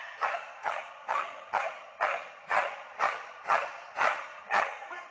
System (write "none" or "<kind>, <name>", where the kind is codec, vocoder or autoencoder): vocoder, HiFi-GAN